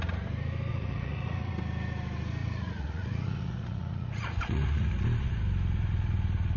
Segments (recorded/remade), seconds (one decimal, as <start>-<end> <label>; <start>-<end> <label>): 0.0-0.7 recorded; 0.7-1.5 remade; 1.5-2.4 recorded; 2.4-5.0 remade; 5.0-6.6 recorded